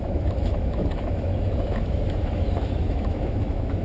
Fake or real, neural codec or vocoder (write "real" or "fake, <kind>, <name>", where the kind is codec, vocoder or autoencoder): fake, autoencoder, DAC-VAE